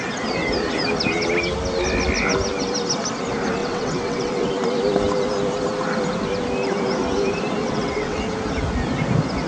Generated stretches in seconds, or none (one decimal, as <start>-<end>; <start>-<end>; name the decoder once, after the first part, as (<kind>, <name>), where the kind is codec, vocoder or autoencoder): 3.6-4.5 (vocoder, WaveNeXt); 7.6-8.2